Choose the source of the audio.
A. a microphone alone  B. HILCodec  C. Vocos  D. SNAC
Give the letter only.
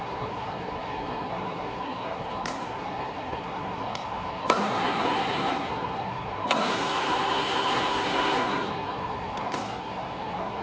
D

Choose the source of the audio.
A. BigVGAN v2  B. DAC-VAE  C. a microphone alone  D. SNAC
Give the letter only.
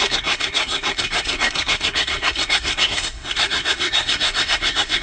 D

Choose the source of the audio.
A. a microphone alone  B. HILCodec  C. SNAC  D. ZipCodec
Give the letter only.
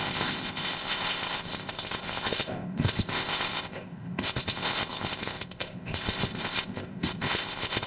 D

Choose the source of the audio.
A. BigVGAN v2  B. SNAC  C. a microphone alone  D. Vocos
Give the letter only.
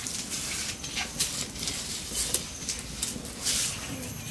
C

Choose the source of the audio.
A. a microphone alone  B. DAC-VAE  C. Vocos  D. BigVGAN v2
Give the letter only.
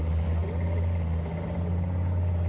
A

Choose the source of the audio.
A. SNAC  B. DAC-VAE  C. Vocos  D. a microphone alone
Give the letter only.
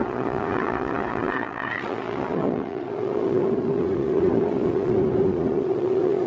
C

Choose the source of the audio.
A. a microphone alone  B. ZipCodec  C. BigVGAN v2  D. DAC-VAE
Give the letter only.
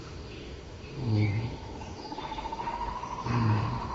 D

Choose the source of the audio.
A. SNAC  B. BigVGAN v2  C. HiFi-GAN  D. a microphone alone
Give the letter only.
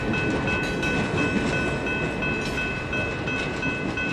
D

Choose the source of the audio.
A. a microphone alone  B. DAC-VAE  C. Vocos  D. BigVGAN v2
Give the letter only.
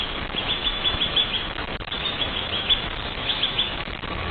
B